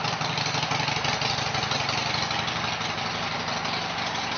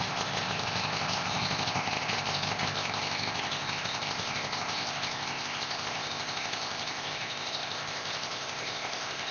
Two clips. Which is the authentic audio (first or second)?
first